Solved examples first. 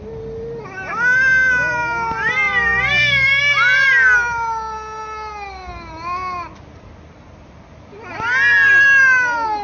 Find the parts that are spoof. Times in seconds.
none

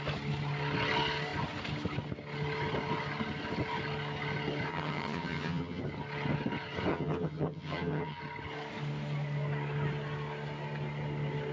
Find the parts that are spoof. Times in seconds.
4.7-5.8 (vocoder, HiFi-GAN); 6.9-8.2

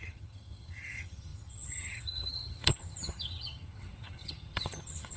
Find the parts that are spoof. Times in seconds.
0.0-5.2 (vocoder, HiFi-GAN)

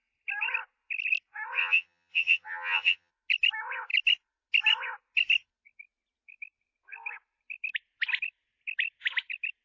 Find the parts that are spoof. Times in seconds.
1.6-3.1 (vocoder, HiFi-GAN)

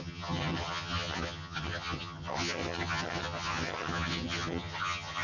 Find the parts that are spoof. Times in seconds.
0.0-5.2 (vocoder, HiFi-GAN)

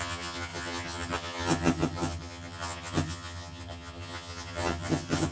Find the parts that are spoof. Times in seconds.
0.0-5.3 (vocoder, HiFi-GAN)